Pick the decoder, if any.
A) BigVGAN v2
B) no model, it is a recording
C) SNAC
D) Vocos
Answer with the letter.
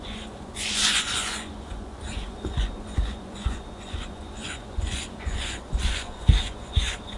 D